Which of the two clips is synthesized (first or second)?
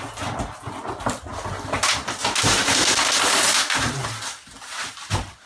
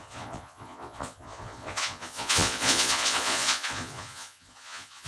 second